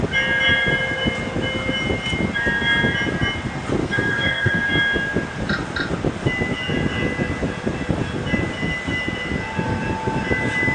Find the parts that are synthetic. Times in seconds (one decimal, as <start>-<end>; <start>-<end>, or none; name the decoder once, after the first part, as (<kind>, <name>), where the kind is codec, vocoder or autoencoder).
3.8-4.6 (codec, SNAC)